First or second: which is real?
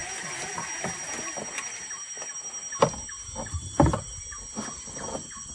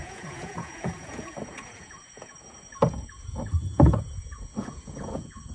first